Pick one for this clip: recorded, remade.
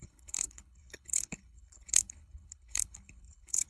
remade